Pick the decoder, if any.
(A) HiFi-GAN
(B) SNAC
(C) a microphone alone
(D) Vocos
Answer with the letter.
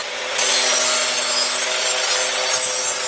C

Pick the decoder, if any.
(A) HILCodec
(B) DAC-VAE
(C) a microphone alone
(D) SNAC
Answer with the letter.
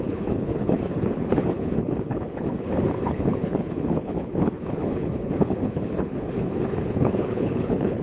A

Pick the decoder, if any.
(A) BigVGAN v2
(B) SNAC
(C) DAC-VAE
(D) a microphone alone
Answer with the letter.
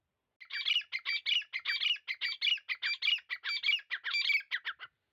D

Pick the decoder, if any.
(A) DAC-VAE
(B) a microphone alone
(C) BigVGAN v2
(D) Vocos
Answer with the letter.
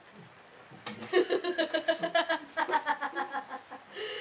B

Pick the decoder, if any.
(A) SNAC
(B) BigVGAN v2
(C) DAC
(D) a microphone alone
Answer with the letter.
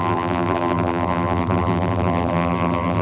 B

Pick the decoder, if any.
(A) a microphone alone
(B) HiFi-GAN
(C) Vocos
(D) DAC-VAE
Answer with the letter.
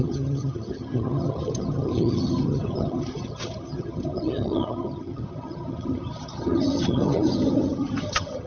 B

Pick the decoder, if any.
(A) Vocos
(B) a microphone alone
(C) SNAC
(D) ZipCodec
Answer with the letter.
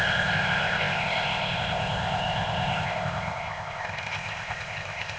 D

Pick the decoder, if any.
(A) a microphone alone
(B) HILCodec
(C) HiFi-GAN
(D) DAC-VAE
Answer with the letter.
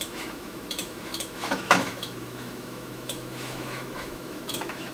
D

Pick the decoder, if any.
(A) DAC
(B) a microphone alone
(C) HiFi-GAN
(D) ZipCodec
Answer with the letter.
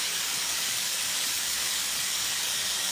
A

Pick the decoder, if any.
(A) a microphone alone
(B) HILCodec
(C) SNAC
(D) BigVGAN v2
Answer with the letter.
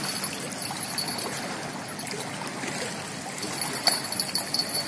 A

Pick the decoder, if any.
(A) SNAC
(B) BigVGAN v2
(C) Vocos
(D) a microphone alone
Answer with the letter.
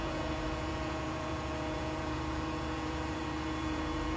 C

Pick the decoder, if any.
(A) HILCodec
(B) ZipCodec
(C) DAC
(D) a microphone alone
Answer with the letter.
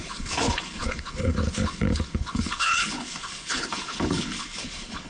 A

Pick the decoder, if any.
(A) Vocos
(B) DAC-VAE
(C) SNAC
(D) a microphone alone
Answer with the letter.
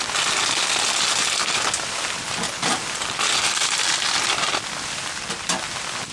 D